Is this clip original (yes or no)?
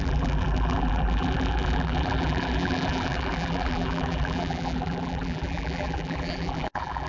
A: no